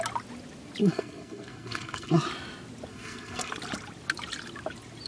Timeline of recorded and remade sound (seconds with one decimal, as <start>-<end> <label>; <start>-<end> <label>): 0.0-0.8 recorded; 0.8-2.2 remade; 2.2-2.9 recorded; 2.9-3.5 remade; 3.5-5.1 recorded